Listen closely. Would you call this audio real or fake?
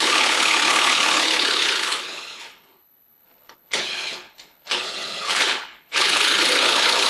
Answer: fake